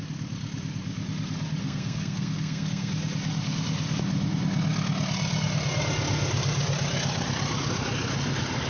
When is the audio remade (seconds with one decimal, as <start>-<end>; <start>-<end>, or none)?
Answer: 1.6-2.9

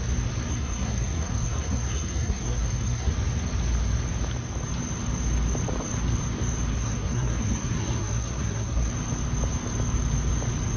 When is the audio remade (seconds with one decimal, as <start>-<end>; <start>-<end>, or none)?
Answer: 0.5-3.1; 6.7-8.9

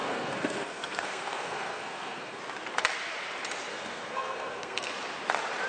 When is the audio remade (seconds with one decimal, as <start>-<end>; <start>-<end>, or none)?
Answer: 0.0-2.4; 3.7-4.9